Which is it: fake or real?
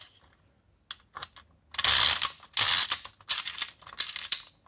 real